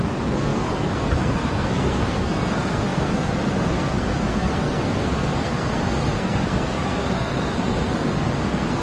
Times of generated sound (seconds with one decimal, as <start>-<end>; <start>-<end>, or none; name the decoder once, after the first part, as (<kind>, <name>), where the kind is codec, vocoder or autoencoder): 0.0-8.8 (codec, SNAC)